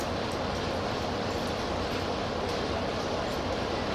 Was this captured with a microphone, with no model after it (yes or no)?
yes